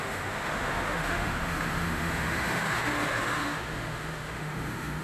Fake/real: fake